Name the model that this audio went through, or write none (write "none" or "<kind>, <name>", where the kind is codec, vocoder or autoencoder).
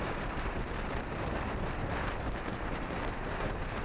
vocoder, BigVGAN v2